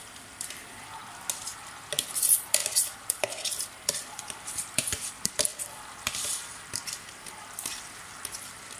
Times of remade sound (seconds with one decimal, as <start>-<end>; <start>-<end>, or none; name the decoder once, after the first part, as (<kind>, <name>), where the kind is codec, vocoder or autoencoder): 0.0-1.0 (vocoder, BigVGAN v2); 2.1-8.8

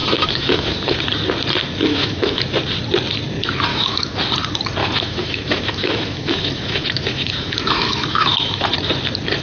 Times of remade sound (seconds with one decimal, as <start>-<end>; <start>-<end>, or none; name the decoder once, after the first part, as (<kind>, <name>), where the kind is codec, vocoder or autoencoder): 0.0-1.0 (autoencoder, DAC-VAE); 1.9-2.4; 3.7-4.2; 4.8-8.7

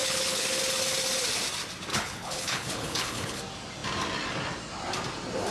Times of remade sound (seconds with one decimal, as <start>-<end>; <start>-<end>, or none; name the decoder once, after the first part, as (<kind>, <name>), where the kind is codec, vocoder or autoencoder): 0.0-0.6 (codec, HILCodec); 1.9-3.4

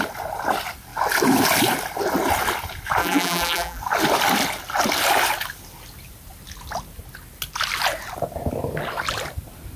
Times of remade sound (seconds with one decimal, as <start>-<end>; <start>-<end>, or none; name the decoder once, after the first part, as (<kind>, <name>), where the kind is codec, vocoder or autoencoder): 3.0-3.8 (vocoder, BigVGAN v2)